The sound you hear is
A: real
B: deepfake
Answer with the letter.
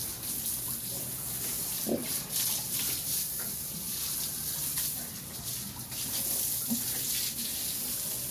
A